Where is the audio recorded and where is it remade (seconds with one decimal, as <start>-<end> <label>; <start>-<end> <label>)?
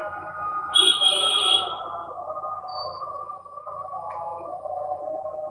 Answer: 0.0-1.4 remade; 1.4-2.7 recorded; 2.7-5.0 remade; 5.0-5.5 recorded